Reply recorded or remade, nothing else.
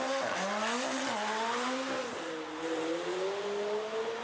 recorded